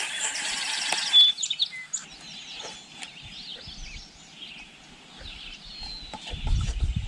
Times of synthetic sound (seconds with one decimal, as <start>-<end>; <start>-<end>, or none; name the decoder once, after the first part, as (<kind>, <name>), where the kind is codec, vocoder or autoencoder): none